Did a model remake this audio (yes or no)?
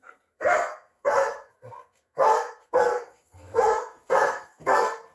yes